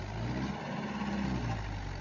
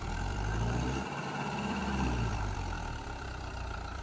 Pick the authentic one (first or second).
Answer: first